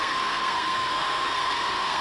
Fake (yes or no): yes